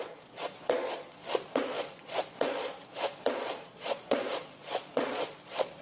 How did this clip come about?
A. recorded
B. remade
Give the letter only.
B